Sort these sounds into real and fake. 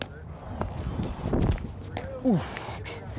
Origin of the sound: real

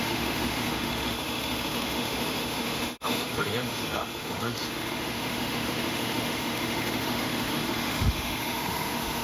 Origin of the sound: fake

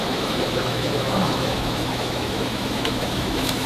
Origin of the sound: fake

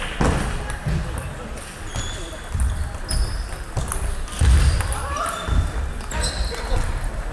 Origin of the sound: real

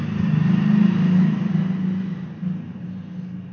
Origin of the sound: real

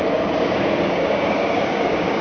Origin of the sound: fake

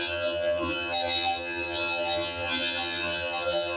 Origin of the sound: fake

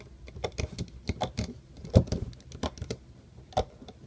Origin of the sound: real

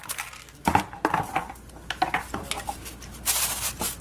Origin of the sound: real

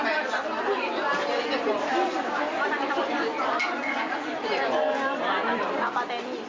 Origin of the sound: real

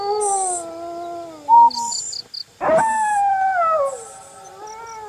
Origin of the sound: real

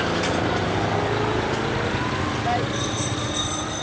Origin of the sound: real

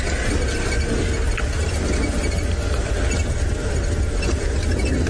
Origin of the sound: real